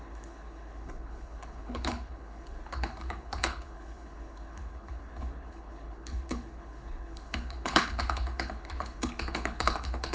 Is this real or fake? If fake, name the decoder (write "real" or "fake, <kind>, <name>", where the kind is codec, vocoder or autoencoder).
fake, codec, HILCodec